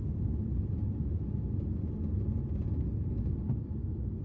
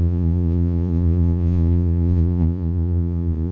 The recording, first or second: first